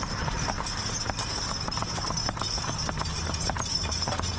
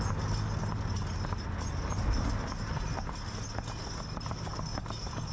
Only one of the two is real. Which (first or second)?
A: second